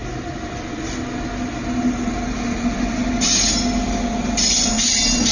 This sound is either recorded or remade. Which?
recorded